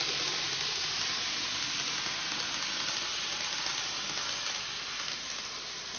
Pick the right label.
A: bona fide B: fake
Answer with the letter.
A